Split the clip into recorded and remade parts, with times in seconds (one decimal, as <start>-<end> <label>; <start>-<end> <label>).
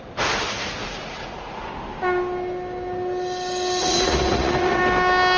0.0-0.8 recorded; 0.8-1.7 remade; 1.7-3.8 recorded; 3.8-4.8 remade; 4.8-5.4 recorded